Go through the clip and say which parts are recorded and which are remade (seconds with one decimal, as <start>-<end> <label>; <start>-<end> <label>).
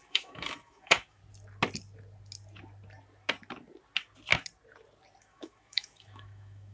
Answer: 0.0-1.2 remade; 1.2-5.2 recorded; 5.2-6.7 remade